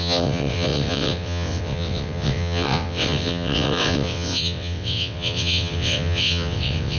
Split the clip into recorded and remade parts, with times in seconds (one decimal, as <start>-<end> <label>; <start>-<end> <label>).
0.0-7.0 remade